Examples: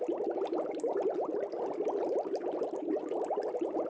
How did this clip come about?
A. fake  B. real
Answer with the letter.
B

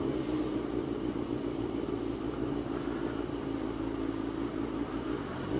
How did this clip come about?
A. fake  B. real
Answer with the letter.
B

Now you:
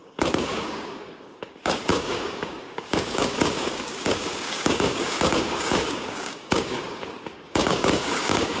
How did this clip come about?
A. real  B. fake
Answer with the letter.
B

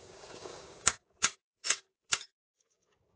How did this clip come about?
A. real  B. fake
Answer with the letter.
B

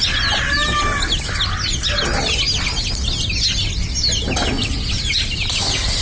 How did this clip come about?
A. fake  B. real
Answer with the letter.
B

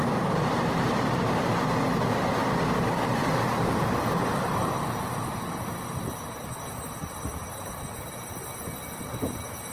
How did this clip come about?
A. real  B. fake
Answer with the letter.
A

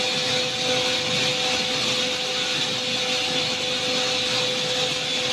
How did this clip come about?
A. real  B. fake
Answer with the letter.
A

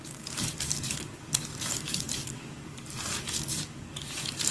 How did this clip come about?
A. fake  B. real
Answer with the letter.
A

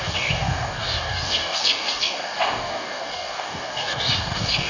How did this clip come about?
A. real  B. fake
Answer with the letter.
B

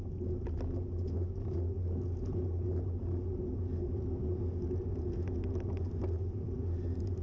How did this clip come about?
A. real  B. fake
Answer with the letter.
A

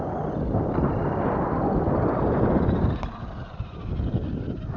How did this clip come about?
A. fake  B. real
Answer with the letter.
B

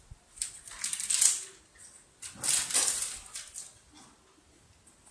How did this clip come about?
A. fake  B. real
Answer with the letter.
B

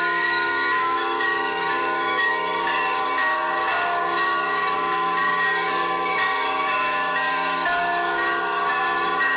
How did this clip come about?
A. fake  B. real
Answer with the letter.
A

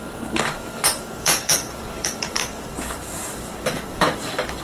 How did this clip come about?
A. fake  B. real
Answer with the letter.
A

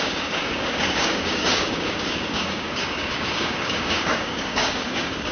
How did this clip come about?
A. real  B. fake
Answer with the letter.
B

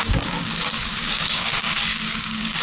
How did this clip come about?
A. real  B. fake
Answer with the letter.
B